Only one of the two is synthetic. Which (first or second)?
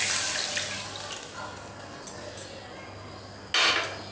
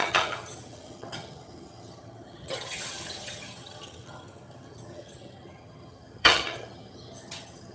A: second